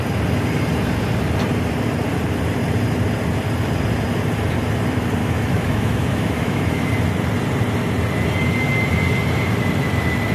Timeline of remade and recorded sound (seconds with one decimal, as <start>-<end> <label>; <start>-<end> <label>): 0.0-5.2 recorded; 5.2-6.9 remade; 6.9-10.3 recorded